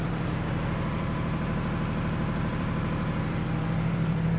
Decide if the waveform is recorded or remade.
remade